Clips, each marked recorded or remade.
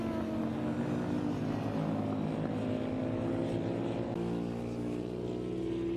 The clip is recorded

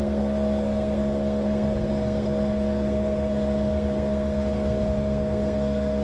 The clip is remade